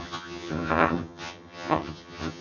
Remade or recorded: remade